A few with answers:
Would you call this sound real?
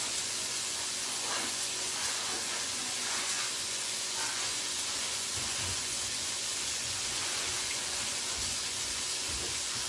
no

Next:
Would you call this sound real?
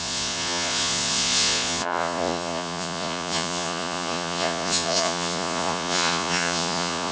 no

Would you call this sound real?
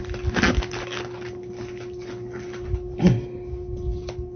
yes